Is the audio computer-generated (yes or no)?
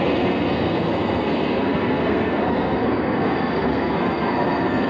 yes